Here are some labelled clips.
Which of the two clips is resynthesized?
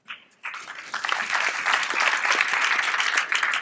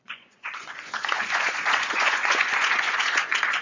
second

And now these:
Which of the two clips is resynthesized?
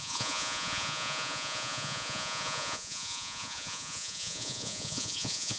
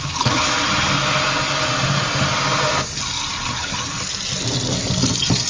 first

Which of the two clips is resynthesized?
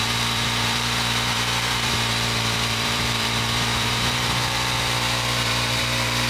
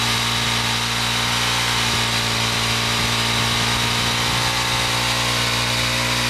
first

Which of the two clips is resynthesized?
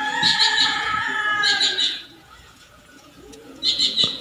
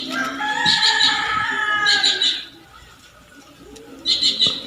first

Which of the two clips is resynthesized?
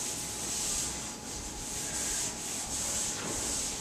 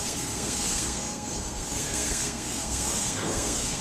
second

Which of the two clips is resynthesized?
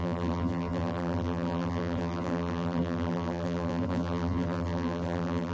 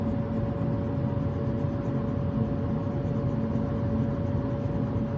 first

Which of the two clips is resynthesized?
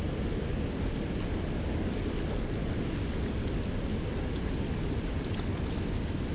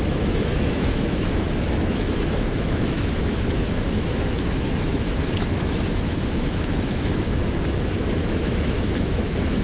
second